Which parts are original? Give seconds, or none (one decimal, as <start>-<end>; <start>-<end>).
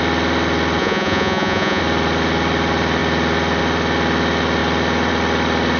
0.0-0.8; 1.8-5.8